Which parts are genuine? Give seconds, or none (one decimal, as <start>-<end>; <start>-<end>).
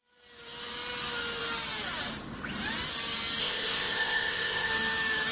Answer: 0.0-3.4; 4.7-5.3